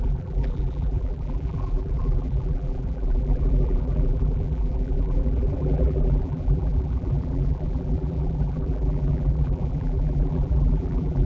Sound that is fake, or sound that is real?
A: fake